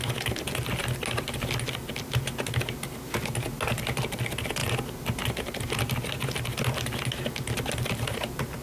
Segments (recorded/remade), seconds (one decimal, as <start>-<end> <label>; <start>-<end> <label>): 0.0-8.6 recorded